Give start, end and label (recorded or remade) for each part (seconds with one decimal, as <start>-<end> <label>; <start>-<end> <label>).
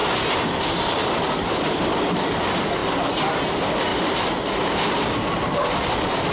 0.0-0.8 recorded; 0.8-2.8 remade; 2.8-3.5 recorded; 3.5-3.9 remade; 3.9-4.6 recorded; 4.6-6.3 remade